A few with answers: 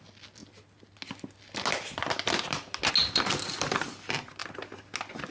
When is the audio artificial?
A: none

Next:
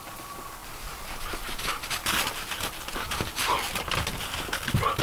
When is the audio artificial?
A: 0.6-1.2; 2.0-4.2

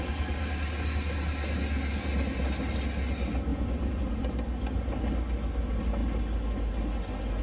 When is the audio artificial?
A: 3.5-4.2

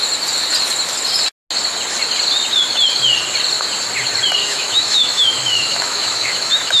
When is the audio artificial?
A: 4.4-6.8

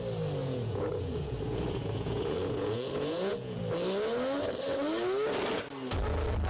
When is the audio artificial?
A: 0.4-3.6